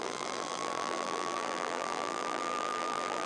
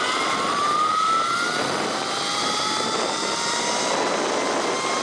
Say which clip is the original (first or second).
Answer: second